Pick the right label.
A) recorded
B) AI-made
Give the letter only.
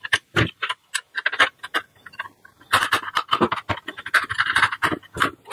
A